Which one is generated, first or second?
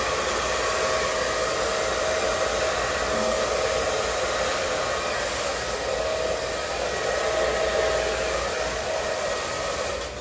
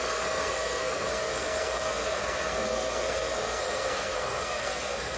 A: second